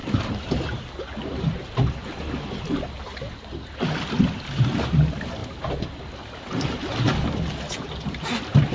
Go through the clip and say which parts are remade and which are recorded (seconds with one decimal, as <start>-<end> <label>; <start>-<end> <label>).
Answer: 0.0-8.7 recorded